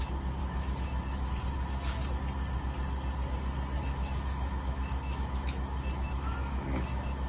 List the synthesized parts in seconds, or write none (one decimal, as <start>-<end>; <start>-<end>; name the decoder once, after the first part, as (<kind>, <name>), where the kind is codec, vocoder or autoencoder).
0.4-1.3 (autoencoder, DAC-VAE); 3.8-7.3